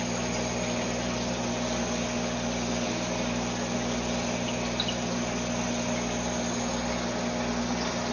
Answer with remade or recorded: recorded